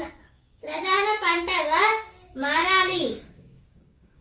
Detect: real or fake fake